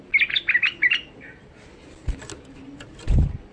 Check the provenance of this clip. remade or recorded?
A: recorded